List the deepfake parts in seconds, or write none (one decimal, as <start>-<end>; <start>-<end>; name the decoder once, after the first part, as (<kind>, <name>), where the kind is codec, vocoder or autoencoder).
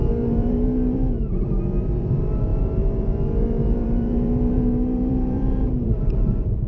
0.0-6.7 (vocoder, BigVGAN v2)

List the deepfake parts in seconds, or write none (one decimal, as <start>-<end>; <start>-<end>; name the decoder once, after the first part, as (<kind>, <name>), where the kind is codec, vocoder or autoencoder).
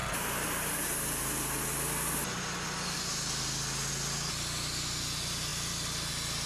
none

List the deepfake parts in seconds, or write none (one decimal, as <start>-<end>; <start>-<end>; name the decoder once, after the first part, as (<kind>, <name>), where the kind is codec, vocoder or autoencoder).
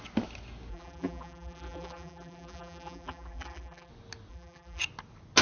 0.7-3.9 (vocoder, BigVGAN v2); 4.3-4.8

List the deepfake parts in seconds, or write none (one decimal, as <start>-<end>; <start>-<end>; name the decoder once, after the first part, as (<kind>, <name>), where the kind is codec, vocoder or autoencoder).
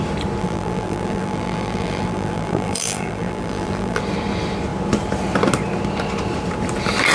0.4-4.0 (vocoder, BigVGAN v2)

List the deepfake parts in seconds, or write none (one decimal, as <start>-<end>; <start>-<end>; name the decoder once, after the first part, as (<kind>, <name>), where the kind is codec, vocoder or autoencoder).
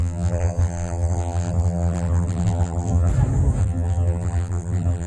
0.0-3.1 (vocoder, BigVGAN v2); 3.6-5.1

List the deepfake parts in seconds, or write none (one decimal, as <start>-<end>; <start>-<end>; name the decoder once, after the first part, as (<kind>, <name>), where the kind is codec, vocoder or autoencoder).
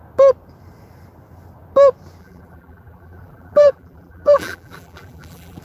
2.2-5.6 (vocoder, BigVGAN v2)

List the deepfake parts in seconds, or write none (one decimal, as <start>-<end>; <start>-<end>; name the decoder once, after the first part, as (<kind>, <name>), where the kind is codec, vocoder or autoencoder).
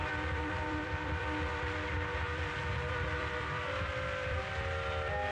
0.0-2.7 (vocoder, BigVGAN v2); 3.2-4.4